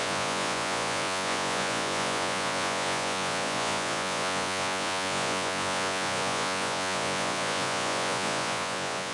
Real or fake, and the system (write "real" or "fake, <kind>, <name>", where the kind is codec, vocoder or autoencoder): fake, vocoder, Vocos